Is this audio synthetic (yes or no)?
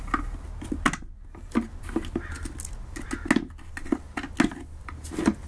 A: no